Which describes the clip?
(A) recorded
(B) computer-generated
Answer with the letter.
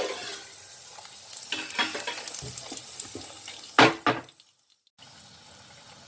A